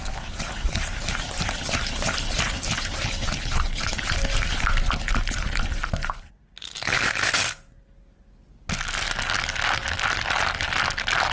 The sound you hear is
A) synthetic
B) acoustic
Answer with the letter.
B